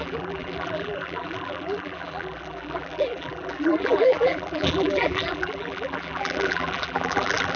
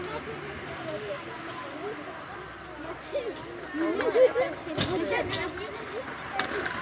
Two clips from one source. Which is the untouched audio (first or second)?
second